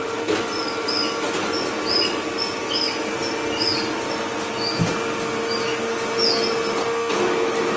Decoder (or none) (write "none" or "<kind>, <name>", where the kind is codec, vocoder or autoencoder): none